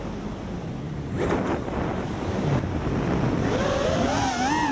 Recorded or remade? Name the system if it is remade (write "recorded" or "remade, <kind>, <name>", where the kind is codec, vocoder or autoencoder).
recorded